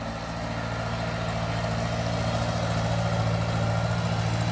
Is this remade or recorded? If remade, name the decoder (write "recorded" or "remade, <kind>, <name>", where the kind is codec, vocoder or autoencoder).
recorded